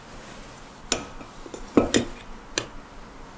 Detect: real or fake real